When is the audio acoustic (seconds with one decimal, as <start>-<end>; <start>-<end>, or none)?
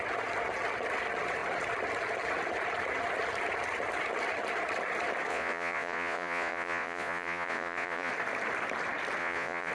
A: 0.0-5.3; 8.1-9.2